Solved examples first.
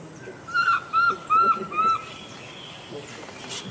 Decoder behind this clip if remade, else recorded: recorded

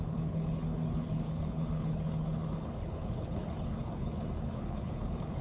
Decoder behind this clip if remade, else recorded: remade, codec, HILCodec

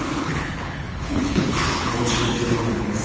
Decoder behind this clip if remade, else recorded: remade, codec, HILCodec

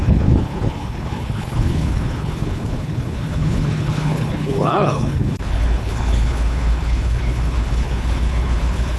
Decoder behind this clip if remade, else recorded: remade, codec, HILCodec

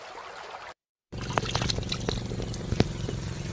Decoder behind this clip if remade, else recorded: recorded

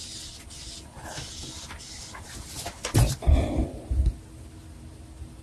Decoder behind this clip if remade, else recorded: recorded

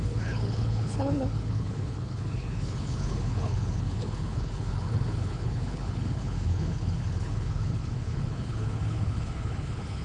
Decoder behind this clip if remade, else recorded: remade, codec, HILCodec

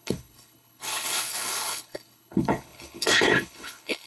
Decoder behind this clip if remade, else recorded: remade, codec, HILCodec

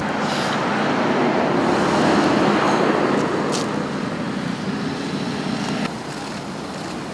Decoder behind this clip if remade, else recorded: recorded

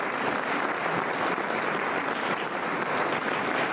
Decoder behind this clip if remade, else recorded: recorded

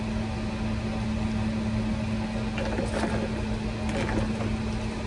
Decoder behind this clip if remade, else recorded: recorded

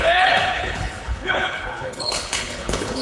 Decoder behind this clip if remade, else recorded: remade, codec, HILCodec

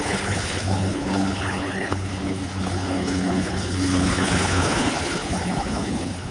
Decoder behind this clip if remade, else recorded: remade, codec, HILCodec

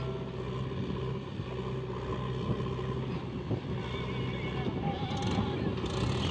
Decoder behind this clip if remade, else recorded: recorded